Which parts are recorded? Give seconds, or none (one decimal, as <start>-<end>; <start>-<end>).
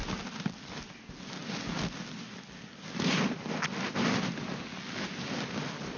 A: 0.0-6.0